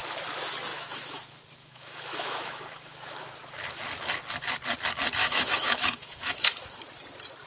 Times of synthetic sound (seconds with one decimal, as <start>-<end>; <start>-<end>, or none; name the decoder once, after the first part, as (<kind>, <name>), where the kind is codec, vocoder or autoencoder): 0.7-1.2 (autoencoder, DAC-VAE); 1.6-3.3; 5.2-6.8